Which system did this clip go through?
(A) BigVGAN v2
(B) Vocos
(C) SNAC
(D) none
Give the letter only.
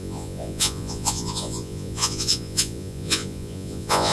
B